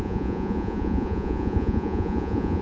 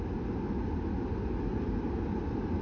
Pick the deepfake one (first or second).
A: first